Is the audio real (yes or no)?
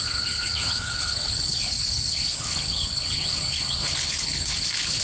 no